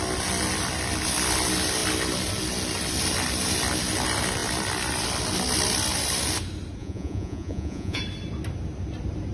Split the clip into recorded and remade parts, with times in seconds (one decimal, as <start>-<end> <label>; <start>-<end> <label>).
0.0-6.8 recorded; 6.8-8.0 remade; 8.0-9.3 recorded